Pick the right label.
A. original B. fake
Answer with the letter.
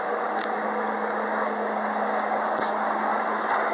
A